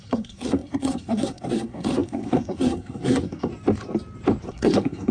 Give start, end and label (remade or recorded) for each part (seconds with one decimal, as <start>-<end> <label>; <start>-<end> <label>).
0.0-3.5 remade; 3.5-4.5 recorded; 4.5-5.1 remade